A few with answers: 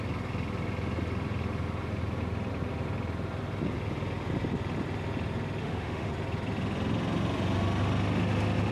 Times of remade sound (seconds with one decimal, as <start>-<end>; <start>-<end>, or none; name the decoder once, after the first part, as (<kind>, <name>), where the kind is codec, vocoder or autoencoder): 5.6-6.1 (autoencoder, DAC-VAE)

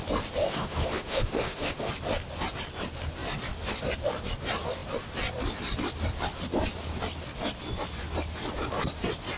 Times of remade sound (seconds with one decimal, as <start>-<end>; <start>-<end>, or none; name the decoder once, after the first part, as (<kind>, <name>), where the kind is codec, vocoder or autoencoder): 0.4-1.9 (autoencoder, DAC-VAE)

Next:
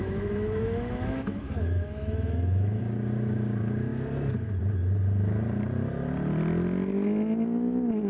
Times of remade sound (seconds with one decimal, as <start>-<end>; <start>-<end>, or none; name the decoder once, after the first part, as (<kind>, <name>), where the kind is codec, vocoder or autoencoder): 0.0-2.8 (autoencoder, DAC-VAE)

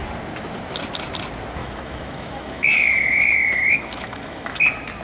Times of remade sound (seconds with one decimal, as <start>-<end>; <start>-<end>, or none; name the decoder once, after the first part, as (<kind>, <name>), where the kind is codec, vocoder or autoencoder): 1.6-4.6 (autoencoder, DAC-VAE)